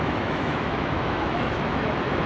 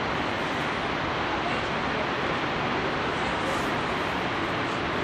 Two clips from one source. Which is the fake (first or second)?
first